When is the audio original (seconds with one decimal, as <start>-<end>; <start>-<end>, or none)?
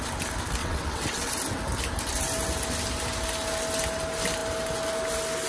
0.0-0.6; 1.3-5.5